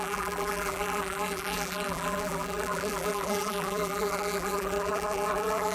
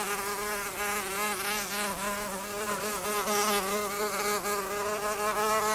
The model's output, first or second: first